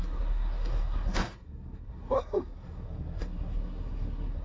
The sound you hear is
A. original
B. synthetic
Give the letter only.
B